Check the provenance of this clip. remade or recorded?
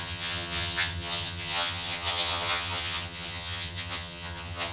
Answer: remade